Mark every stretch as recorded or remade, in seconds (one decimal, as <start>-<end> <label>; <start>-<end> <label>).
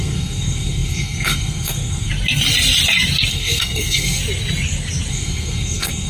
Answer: 0.0-2.1 remade; 2.1-3.3 recorded; 3.3-4.2 remade; 4.2-5.1 recorded; 5.1-6.1 remade